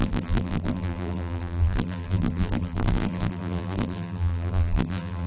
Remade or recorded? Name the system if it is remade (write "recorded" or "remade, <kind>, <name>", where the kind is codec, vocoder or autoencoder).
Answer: remade, vocoder, BigVGAN v2